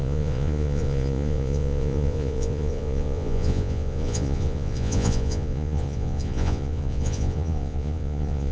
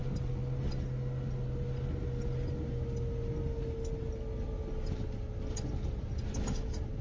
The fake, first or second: first